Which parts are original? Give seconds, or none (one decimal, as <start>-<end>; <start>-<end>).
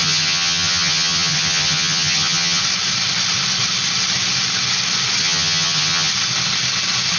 2.6-5.2; 6.1-7.2